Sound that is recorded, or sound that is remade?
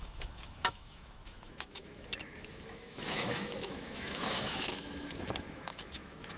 remade